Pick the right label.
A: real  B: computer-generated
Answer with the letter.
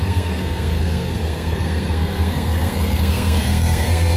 B